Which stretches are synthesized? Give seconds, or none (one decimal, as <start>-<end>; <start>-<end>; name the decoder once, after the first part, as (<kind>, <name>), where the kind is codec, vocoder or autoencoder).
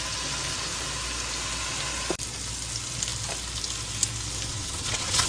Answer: 4.5-5.3 (vocoder, WaveNeXt)